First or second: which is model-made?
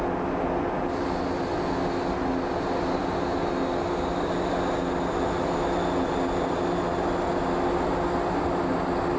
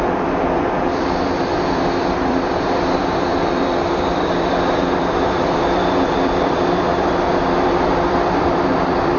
second